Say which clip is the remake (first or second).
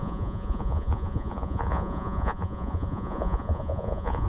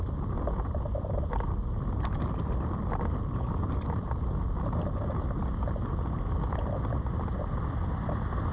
first